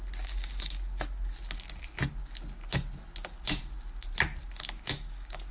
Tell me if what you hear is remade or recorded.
recorded